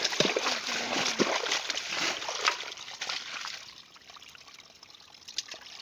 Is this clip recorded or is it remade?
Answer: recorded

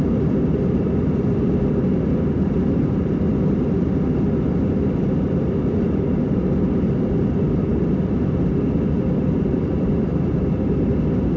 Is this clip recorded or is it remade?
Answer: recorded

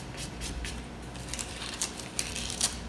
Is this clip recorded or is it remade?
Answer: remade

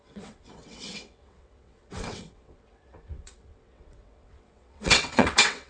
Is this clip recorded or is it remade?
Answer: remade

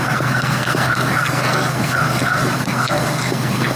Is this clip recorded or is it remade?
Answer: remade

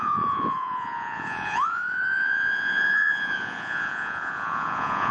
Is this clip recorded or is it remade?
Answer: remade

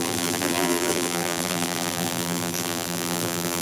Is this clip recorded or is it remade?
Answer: remade